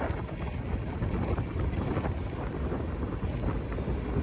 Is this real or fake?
real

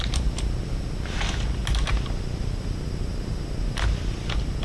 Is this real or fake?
real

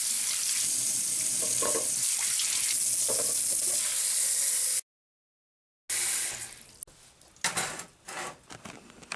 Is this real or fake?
real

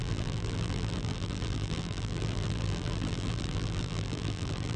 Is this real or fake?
fake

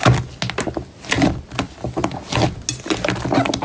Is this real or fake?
real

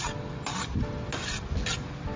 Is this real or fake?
real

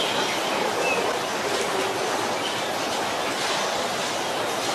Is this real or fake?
real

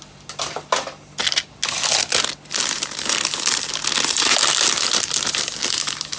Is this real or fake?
real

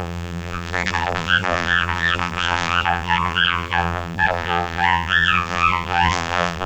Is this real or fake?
fake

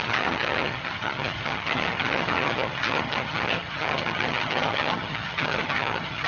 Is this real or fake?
fake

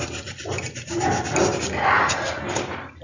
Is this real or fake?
real